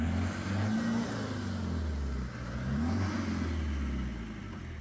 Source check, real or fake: real